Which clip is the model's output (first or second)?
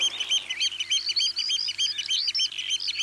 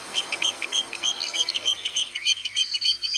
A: second